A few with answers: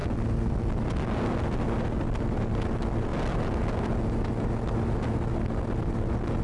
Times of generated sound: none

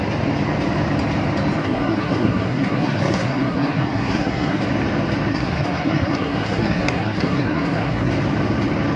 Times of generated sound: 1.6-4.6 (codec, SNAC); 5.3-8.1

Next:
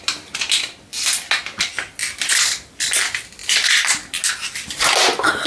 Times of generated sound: none

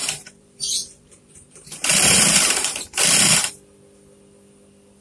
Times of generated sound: 0.0-3.0 (vocoder, BigVGAN v2)

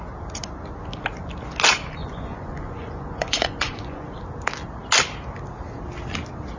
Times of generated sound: 2.0-4.2 (vocoder, Vocos)

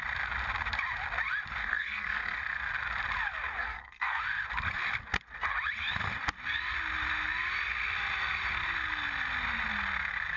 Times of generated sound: 1.6-2.4 (codec, SNAC); 3.6-4.2

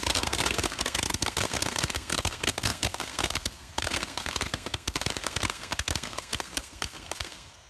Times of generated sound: 0.0-7.7 (codec, SNAC)